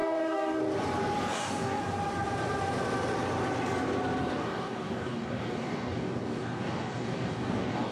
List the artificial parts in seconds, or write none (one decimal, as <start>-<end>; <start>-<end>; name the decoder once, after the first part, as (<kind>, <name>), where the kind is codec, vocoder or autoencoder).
0.0-0.6 (codec, DAC); 1.3-1.8; 4.2-7.9